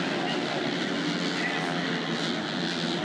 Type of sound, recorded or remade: recorded